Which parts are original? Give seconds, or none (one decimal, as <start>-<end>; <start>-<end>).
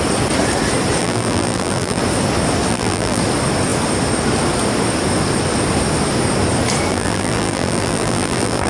0.0-1.0; 2.0-2.7; 3.2-6.9